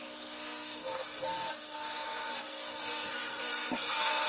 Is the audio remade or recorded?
remade